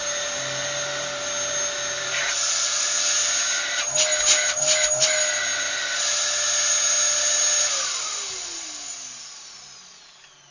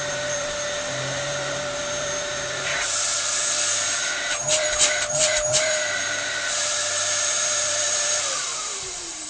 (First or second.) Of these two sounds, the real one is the first